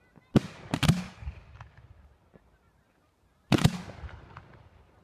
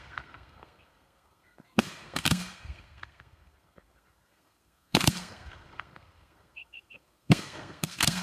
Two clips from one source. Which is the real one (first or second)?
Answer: first